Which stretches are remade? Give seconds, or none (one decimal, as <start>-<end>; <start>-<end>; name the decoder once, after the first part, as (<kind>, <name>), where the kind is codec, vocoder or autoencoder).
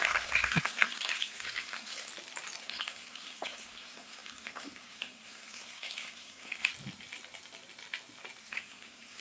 0.0-2.1 (codec, SNAC); 2.6-6.7; 8.4-9.2